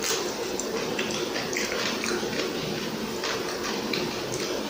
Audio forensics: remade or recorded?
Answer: remade